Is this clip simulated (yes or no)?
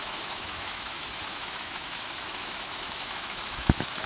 yes